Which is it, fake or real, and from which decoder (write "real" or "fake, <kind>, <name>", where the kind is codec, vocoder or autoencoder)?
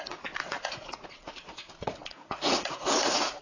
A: fake, vocoder, Vocos